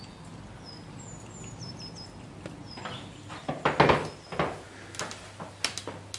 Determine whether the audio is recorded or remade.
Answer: recorded